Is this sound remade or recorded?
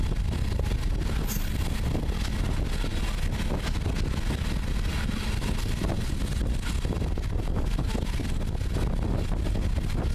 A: recorded